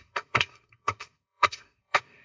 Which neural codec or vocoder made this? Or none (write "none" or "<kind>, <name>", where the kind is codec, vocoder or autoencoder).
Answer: codec, SNAC